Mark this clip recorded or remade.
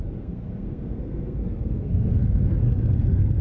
remade